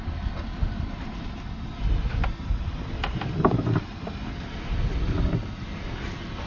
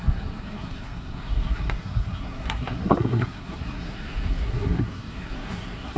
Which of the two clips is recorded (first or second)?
first